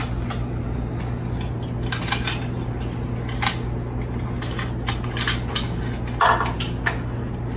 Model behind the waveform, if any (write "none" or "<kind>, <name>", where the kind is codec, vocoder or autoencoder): none